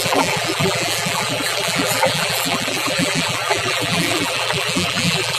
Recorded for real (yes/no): no